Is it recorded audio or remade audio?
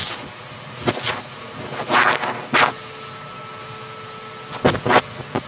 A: recorded